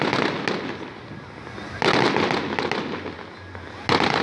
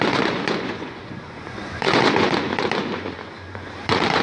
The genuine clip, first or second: first